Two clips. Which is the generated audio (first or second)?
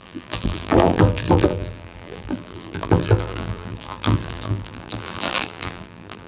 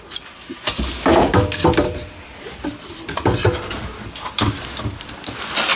first